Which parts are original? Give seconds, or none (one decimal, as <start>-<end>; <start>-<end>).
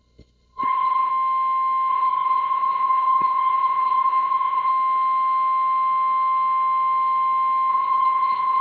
1.1-1.9; 4.7-7.7